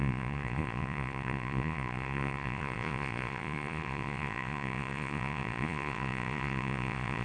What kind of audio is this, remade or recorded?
remade